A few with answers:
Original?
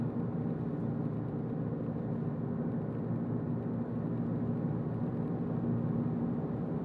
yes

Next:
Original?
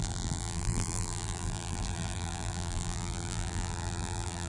no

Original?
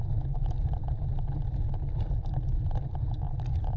no